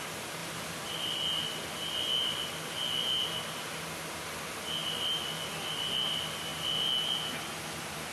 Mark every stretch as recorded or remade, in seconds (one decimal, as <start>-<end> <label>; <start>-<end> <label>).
0.0-0.4 recorded; 0.4-1.4 remade; 1.4-4.8 recorded; 4.8-5.7 remade; 5.7-8.1 recorded